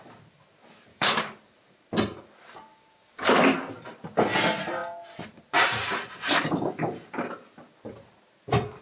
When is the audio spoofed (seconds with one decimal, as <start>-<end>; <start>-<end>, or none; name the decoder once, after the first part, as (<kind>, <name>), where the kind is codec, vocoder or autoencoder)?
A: 0.9-1.7 (codec, DAC); 2.7-3.4